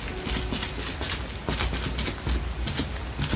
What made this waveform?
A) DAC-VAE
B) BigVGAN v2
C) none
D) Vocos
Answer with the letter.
C